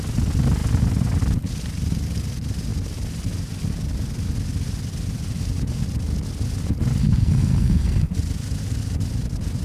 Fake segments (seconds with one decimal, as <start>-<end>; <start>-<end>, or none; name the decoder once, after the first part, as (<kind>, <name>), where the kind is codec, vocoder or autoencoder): 7.0-8.1 (codec, SNAC)